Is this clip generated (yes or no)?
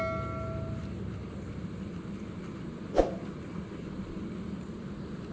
no